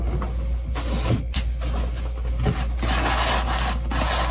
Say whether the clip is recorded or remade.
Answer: recorded